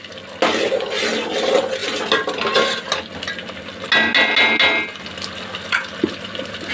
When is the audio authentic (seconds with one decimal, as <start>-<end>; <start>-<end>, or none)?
0.0-6.7